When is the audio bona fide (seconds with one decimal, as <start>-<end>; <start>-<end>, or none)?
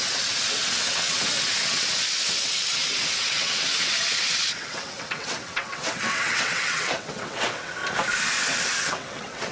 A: 7.8-8.8